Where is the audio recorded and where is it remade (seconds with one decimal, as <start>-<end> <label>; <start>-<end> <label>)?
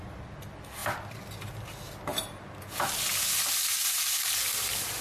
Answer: 0.0-0.8 remade; 0.8-2.6 recorded; 2.6-3.1 remade; 3.1-5.0 recorded